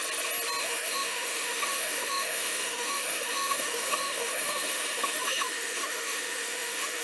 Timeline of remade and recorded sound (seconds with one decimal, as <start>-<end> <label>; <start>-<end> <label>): 0.0-0.6 recorded; 0.6-7.0 remade

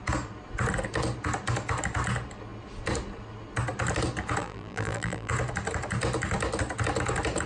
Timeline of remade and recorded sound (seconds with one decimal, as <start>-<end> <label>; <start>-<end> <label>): 0.0-4.4 recorded; 4.4-5.3 remade; 5.3-7.5 recorded

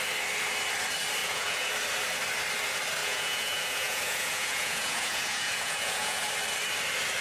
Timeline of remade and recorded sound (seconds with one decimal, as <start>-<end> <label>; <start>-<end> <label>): 0.0-1.2 recorded; 1.2-1.7 remade; 1.7-3.0 recorded; 3.0-6.3 remade; 6.3-7.2 recorded

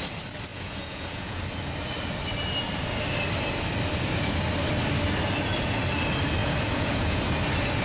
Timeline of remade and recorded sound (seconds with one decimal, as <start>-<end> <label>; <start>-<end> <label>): 0.0-0.5 recorded; 0.5-1.4 remade; 1.4-6.4 recorded; 6.4-7.2 remade; 7.2-7.8 recorded

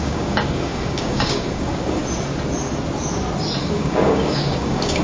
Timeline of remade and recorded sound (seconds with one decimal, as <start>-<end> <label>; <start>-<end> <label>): 0.0-2.0 remade; 2.0-3.6 recorded; 3.6-5.0 remade

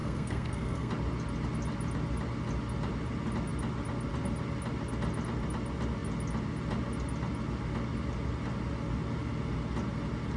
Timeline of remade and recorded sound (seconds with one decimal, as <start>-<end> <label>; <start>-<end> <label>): 0.0-0.9 remade; 0.9-10.4 recorded

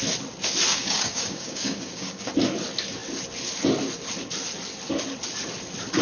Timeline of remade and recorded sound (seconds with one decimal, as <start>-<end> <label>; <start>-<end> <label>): 0.0-0.7 recorded; 0.7-2.3 remade; 2.3-6.0 recorded

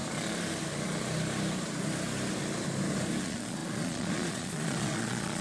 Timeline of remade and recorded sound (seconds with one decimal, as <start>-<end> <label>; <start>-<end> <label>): 0.0-3.2 recorded; 3.2-5.4 remade